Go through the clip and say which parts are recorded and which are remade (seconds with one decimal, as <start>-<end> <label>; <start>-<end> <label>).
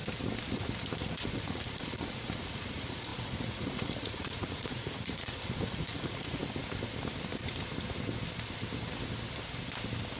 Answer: 0.0-1.0 recorded; 1.0-6.4 remade; 6.4-10.2 recorded